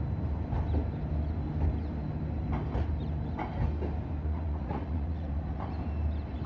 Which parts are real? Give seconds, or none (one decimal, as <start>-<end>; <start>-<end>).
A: 0.0-4.2; 5.7-6.5

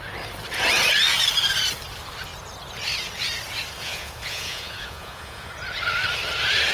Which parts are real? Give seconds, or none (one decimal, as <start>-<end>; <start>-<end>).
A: 0.0-3.8; 5.5-6.7